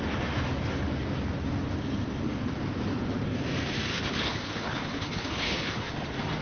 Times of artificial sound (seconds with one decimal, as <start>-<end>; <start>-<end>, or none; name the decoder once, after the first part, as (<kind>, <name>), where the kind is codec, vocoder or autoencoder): 3.9-5.9 (codec, HILCodec)